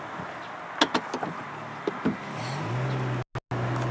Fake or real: real